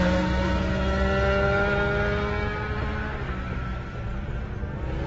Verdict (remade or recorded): recorded